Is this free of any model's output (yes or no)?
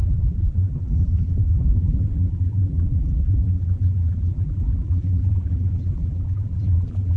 no